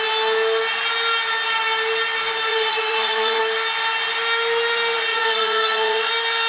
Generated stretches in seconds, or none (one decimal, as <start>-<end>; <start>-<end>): 2.5-3.4; 5.1-6.1